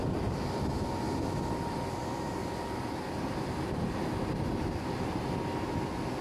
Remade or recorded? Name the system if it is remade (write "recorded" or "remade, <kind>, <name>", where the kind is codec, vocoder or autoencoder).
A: recorded